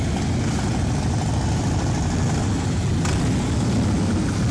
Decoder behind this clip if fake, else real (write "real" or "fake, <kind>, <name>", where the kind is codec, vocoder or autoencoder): real